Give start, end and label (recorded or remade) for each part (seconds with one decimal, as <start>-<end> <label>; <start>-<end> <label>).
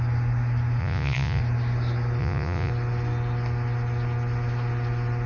0.0-0.8 recorded; 0.8-1.4 remade; 1.4-2.2 recorded; 2.2-2.7 remade; 2.7-5.3 recorded